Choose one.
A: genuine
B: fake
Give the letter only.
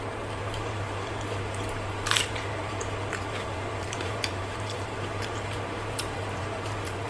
B